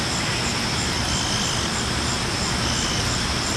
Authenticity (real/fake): real